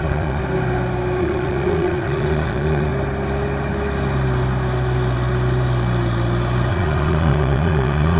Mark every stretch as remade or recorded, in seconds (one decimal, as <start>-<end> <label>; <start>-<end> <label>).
0.0-0.4 remade; 0.4-1.2 recorded; 1.2-2.9 remade; 2.9-6.7 recorded; 6.7-8.2 remade